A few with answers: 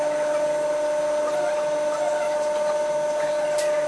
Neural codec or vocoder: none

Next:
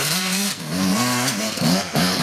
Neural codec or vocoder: codec, SNAC